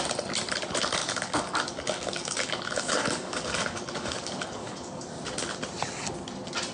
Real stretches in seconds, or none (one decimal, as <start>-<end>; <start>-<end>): 0.0-1.0; 5.0-6.7